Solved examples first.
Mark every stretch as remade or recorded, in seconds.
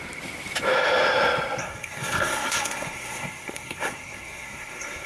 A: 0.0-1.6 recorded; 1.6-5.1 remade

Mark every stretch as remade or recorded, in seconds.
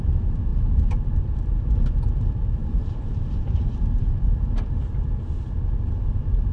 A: 0.0-2.6 recorded; 2.6-5.3 remade; 5.3-6.5 recorded